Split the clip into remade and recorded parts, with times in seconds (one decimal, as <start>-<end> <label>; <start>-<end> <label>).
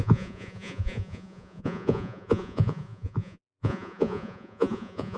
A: 0.0-5.2 remade